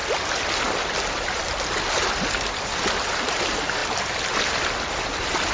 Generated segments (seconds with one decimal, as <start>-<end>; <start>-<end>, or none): 3.3-5.5